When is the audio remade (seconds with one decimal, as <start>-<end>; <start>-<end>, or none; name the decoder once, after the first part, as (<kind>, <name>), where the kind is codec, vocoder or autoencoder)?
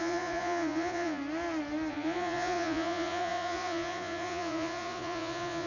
0.0-1.2 (vocoder, Vocos); 1.9-5.7